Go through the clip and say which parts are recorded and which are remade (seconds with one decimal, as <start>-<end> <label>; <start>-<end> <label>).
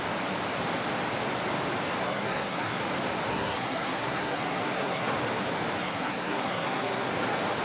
0.0-2.0 recorded; 2.0-2.8 remade; 2.8-3.3 recorded; 3.3-5.1 remade; 5.1-5.8 recorded; 5.8-7.1 remade; 7.1-7.6 recorded